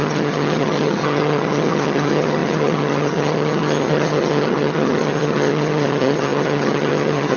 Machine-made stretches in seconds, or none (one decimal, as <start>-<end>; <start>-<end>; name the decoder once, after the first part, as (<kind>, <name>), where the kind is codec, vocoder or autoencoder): 0.0-7.4 (vocoder, HiFi-GAN)

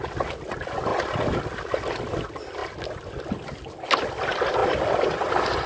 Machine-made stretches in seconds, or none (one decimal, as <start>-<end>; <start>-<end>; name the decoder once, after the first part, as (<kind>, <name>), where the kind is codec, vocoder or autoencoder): none

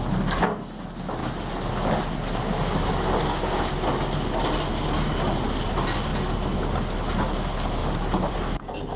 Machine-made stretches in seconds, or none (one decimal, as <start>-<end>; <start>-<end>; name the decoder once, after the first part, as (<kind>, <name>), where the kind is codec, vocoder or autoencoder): none

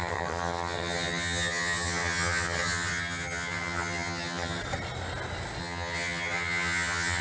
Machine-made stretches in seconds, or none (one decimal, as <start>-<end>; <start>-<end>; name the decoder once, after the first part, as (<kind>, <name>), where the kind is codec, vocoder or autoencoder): 0.0-4.6 (vocoder, HiFi-GAN); 5.6-7.2

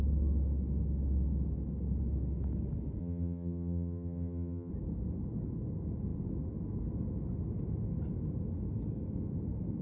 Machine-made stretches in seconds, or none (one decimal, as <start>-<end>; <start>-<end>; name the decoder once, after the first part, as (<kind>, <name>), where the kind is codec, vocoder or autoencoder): 3.0-4.7 (vocoder, HiFi-GAN)

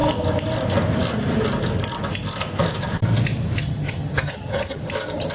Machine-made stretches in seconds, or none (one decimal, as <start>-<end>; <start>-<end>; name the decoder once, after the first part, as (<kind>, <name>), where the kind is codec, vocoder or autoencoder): 3.6-4.8 (vocoder, HiFi-GAN)